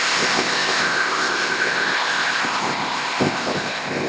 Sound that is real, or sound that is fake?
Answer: fake